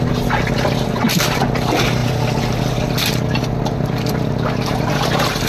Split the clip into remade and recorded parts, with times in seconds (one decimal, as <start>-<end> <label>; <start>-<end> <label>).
0.0-5.5 recorded